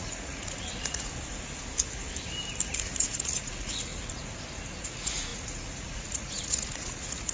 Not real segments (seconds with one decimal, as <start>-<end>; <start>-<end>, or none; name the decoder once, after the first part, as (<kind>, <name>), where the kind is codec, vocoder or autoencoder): 0.0-1.1 (vocoder, Vocos); 2.7-3.9; 4.8-7.3

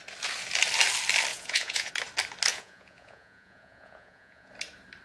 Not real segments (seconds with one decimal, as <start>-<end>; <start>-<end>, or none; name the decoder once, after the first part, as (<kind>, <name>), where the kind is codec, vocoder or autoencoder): 1.3-1.9 (vocoder, Vocos); 2.5-4.5

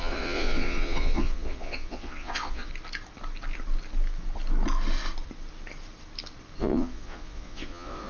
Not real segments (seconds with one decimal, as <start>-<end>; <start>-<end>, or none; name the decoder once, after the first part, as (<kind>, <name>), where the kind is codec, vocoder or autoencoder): 0.0-2.7 (vocoder, Vocos); 6.6-8.1

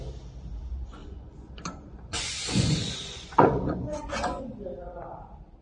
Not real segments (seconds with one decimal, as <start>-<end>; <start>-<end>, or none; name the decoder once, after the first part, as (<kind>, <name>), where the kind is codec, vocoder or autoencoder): 1.0-4.4 (vocoder, Vocos)

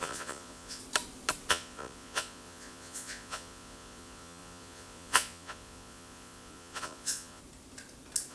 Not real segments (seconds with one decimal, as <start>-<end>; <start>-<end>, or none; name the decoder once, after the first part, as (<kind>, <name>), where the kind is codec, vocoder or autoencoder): 0.0-0.8 (vocoder, Vocos); 1.5-7.4